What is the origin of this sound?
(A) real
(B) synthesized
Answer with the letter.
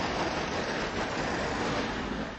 A